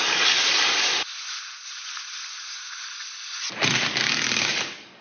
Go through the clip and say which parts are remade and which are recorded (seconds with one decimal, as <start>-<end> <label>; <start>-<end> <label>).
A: 0.0-0.9 remade; 0.9-3.9 recorded; 3.9-5.0 remade